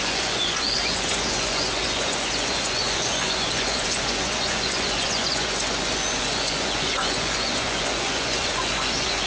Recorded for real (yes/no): no